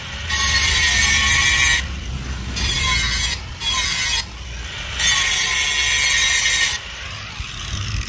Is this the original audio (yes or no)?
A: yes